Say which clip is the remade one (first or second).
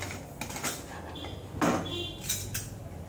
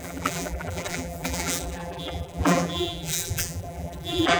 second